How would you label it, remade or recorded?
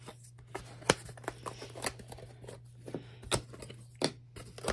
recorded